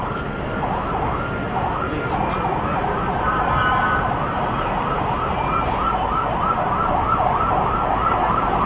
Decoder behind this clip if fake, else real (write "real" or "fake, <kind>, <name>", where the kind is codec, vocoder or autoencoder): real